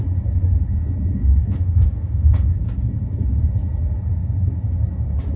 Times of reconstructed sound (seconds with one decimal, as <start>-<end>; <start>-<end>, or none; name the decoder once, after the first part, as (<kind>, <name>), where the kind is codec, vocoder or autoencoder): 1.1-2.5 (autoencoder, DAC-VAE)